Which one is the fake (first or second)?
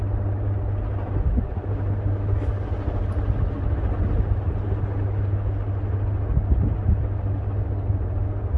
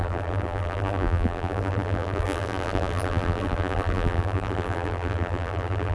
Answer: second